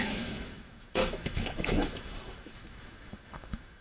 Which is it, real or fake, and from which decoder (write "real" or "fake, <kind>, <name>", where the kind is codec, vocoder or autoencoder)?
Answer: fake, autoencoder, DAC-VAE